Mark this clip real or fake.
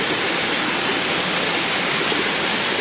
real